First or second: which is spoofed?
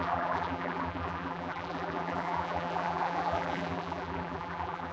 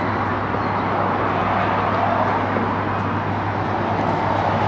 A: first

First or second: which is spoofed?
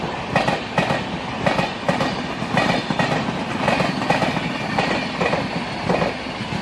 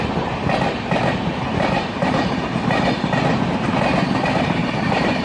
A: second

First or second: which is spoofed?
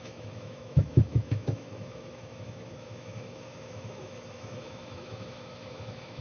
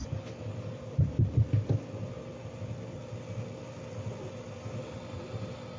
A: first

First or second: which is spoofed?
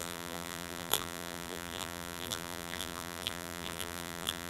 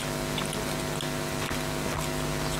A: first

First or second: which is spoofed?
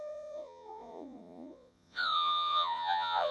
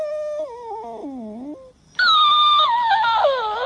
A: first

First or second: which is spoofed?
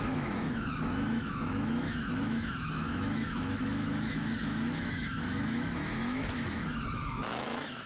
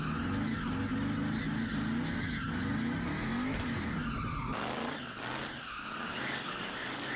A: first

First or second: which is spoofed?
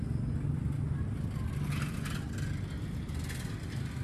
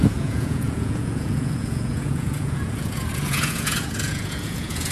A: second